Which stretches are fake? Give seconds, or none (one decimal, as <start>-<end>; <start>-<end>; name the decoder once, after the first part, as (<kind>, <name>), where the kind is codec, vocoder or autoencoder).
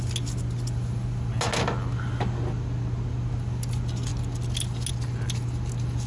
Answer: none